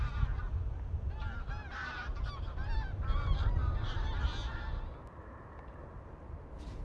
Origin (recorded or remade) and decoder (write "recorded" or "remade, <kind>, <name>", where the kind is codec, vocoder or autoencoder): recorded